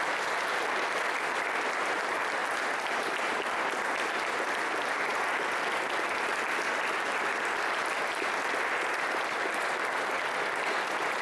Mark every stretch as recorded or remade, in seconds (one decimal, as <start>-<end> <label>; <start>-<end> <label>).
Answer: 0.0-11.2 recorded